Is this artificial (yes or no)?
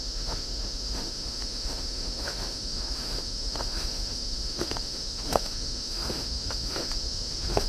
yes